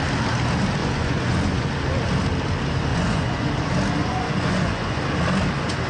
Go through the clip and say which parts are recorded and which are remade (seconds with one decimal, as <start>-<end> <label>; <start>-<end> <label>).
0.0-0.8 recorded; 0.8-1.7 remade; 1.7-2.9 recorded; 2.9-3.5 remade; 3.5-4.0 recorded; 4.0-5.0 remade; 5.0-5.9 recorded